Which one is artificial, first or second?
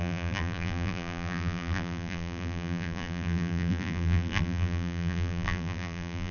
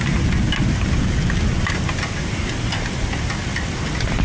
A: first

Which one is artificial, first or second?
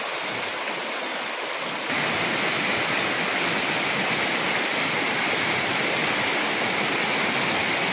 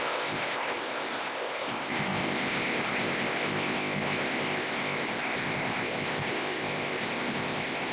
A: second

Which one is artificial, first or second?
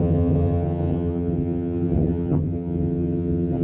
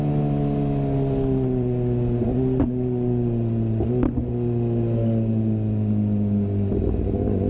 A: first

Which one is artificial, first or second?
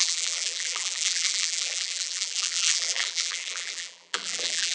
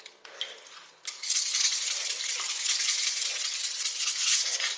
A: first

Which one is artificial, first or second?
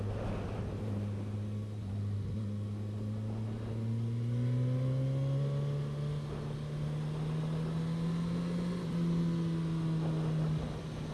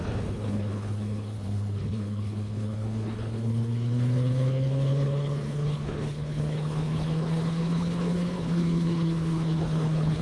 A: second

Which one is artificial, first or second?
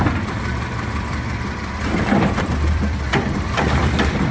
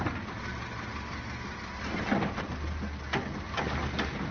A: first